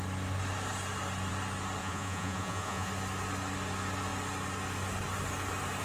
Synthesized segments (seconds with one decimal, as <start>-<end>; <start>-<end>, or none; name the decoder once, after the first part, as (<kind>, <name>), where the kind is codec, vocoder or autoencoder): 1.8-2.9 (vocoder, Vocos)